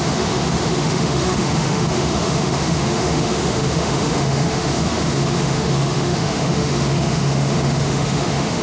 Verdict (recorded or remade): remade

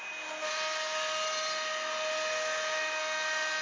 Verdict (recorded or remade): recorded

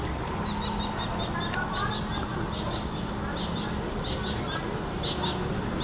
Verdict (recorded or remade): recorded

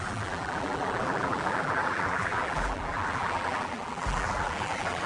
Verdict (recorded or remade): remade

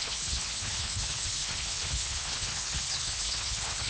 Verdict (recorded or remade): remade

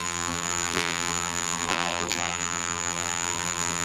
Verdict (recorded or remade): remade